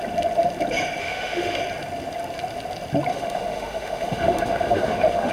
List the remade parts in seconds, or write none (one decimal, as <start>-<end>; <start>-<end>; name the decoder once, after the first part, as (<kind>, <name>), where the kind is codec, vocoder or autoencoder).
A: 1.0-1.6 (autoencoder, DAC-VAE); 3.1-5.3